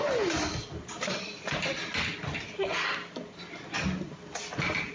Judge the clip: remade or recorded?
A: recorded